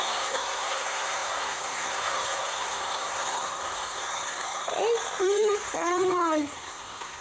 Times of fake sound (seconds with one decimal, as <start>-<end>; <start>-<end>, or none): 0.0-4.7; 5.2-7.2